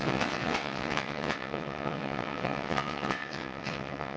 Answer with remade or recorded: remade